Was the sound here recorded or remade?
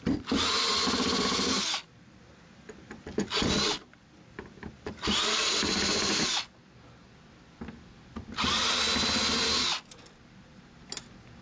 recorded